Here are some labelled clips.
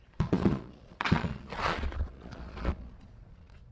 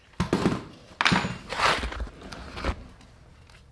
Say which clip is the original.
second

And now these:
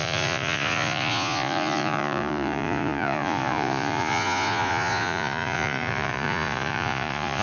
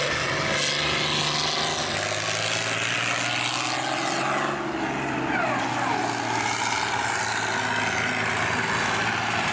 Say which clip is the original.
second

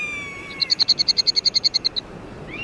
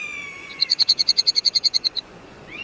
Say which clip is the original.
first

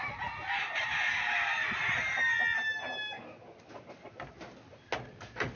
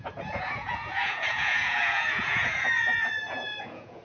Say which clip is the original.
first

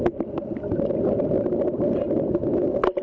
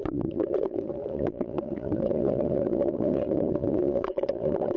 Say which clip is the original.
first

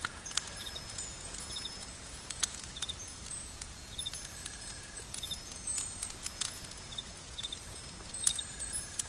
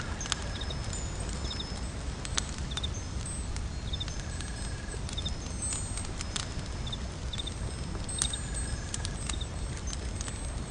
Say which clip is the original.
second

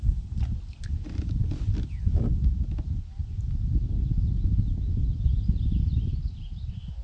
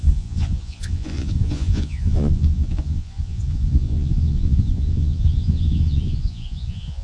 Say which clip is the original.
first